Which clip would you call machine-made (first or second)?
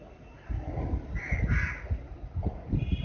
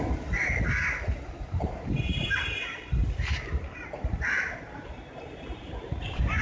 second